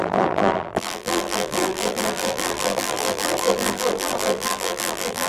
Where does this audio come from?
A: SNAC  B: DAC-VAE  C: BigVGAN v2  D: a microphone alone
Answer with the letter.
C